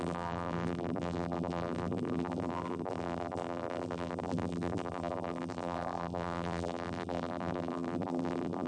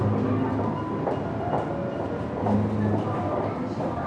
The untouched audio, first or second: second